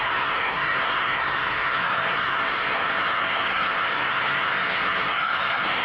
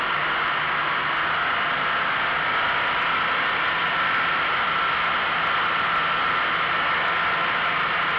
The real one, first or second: second